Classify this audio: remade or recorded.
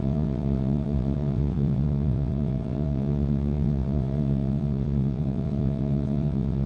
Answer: remade